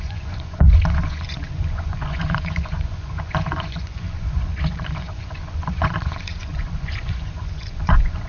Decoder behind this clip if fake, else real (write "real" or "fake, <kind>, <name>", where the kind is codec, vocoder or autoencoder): fake, vocoder, Vocos